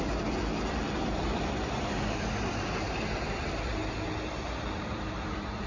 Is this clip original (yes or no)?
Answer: no